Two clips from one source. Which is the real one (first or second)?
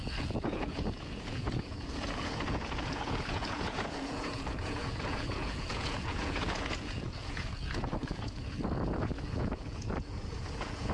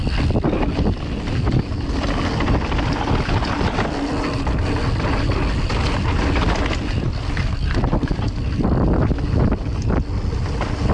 second